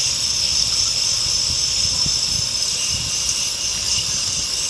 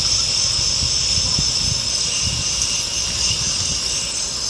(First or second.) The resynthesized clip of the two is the first